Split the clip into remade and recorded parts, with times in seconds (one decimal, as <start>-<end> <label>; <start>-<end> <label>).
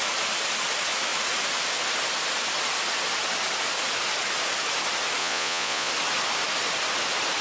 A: 0.0-5.2 recorded; 5.2-5.9 remade; 5.9-7.4 recorded